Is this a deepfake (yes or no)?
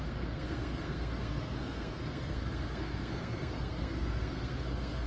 yes